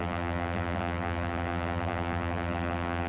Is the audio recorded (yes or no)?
no